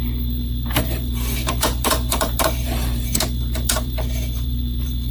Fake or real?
fake